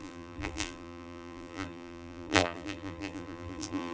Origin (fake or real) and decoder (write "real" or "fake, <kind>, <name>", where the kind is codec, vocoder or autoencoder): fake, vocoder, BigVGAN v2